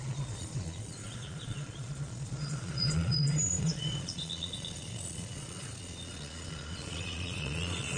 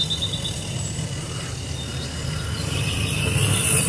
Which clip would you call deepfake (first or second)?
first